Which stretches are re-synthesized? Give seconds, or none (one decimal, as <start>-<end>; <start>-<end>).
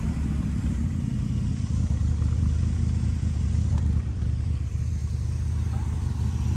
none